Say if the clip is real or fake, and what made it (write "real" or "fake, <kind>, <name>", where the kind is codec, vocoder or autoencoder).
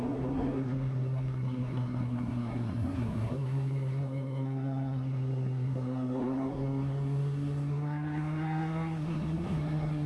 fake, codec, SNAC